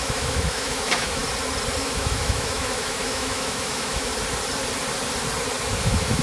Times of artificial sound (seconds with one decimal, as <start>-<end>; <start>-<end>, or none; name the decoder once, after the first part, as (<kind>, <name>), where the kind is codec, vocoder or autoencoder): 0.0-1.2 (autoencoder, DAC-VAE); 1.8-4.1; 5.7-6.2